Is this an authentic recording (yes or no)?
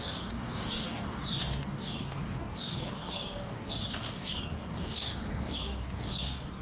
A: no